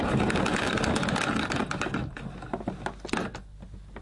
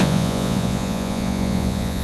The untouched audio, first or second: first